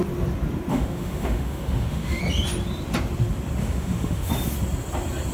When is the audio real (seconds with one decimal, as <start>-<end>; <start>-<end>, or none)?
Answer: 0.0-0.7; 2.2-3.6; 4.3-5.3